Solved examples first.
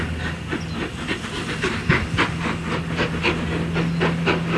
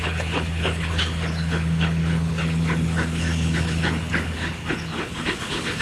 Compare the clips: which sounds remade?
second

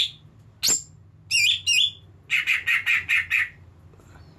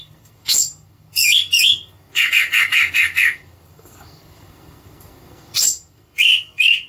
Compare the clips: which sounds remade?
second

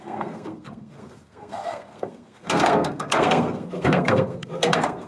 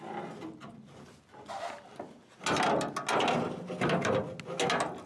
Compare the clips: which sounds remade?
first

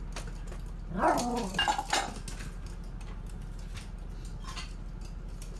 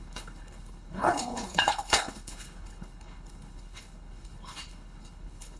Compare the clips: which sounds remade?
second